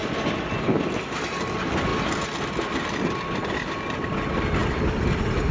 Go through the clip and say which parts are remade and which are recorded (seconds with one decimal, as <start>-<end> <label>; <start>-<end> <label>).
0.0-5.5 recorded